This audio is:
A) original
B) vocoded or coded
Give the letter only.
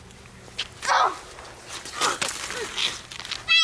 A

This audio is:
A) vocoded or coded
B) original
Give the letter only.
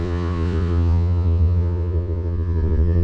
A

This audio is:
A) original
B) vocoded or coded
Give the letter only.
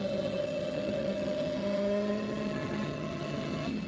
B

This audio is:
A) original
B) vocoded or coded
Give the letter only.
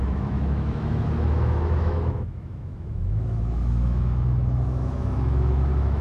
B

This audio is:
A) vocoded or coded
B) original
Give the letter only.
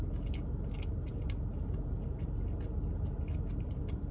B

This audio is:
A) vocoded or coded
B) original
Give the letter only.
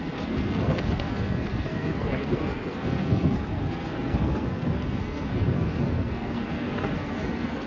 A